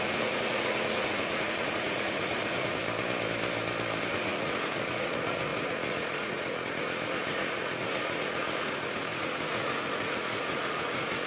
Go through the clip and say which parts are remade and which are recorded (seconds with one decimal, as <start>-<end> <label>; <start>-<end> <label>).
0.0-2.8 remade; 2.8-4.1 recorded; 4.1-11.3 remade

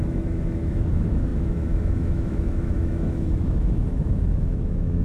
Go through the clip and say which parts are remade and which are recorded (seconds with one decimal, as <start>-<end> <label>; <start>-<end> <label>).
0.0-5.0 remade

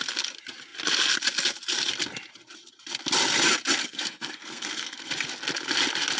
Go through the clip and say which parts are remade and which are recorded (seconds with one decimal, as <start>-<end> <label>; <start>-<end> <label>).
0.0-3.8 recorded; 3.8-5.1 remade; 5.1-6.2 recorded